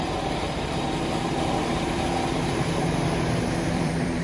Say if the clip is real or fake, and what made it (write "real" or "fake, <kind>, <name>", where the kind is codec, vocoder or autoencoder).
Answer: fake, vocoder, BigVGAN v2